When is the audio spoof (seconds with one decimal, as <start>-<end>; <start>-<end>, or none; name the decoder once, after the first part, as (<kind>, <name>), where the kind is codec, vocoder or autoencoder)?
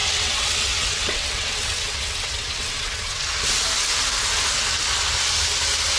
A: 0.0-3.2 (vocoder, WaveNeXt)